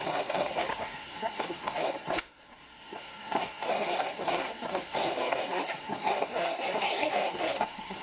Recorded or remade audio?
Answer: remade